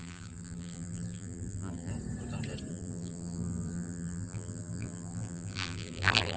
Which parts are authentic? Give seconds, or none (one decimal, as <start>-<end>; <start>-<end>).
1.9-2.7